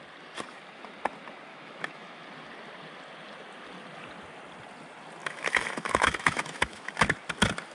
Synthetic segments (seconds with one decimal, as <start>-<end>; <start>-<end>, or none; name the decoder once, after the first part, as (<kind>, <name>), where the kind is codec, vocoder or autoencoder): 1.5-2.2 (autoencoder, DAC-VAE); 5.2-6.9